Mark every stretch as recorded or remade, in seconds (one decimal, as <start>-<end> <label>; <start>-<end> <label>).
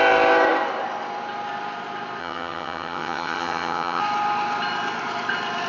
0.0-2.2 recorded; 2.2-4.0 remade; 4.0-5.7 recorded